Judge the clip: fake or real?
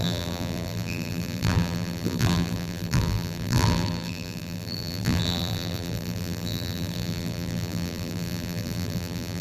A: fake